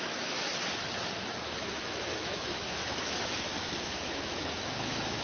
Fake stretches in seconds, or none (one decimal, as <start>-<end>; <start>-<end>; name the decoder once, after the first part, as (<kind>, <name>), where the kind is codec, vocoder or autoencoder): 0.0-0.5 (autoencoder, DAC-VAE); 1.4-5.2

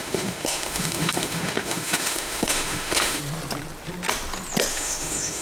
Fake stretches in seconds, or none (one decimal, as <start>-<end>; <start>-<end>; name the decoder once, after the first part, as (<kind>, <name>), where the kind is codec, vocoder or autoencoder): 0.0-3.2 (autoencoder, DAC-VAE); 4.7-5.4

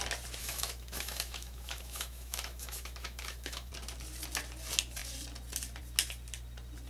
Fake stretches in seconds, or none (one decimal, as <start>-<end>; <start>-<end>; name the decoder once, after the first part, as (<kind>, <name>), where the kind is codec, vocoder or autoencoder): 0.4-3.7 (autoencoder, DAC-VAE)

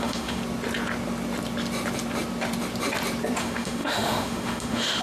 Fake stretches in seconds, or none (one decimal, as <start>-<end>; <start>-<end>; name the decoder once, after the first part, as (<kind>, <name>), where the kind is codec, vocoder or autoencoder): 0.0-0.4 (autoencoder, DAC-VAE); 3.4-5.0

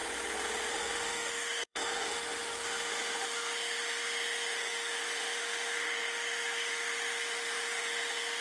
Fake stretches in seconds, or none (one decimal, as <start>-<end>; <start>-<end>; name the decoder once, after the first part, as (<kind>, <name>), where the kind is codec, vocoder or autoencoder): 0.7-8.4 (autoencoder, DAC-VAE)